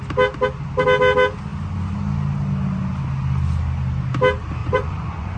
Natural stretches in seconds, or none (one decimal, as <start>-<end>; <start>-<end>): 0.0-4.6